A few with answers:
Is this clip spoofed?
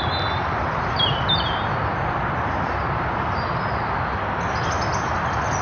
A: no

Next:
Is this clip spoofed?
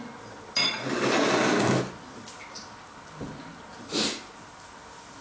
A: no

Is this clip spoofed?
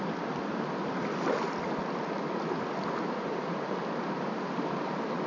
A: no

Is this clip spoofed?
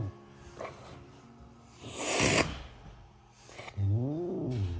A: no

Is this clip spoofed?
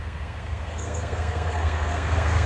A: yes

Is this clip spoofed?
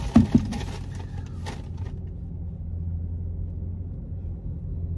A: no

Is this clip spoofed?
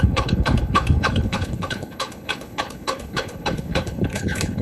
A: yes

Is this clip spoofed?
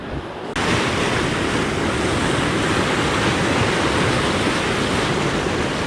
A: no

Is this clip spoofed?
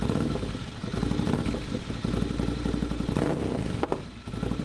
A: no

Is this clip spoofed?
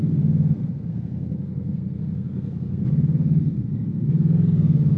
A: yes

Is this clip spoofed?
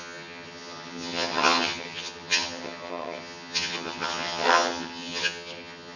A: yes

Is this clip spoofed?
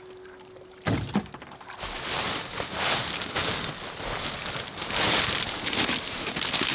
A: no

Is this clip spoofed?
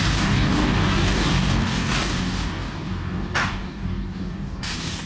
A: yes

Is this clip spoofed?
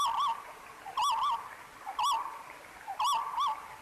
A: no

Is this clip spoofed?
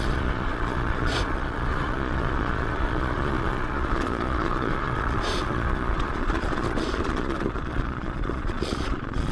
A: yes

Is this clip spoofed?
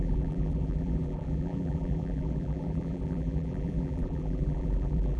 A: yes